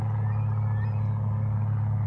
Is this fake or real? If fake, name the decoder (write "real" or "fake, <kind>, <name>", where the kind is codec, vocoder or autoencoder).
real